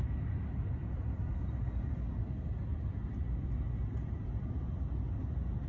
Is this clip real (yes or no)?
yes